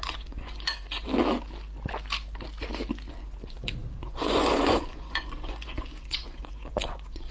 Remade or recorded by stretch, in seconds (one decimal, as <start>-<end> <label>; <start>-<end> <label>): 0.0-1.1 remade; 1.1-3.1 recorded; 3.1-7.3 remade